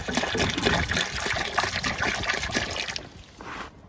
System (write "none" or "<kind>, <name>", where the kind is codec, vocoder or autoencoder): none